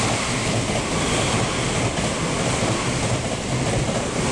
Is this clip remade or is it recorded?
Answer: recorded